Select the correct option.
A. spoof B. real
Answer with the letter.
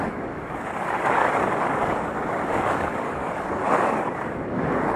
A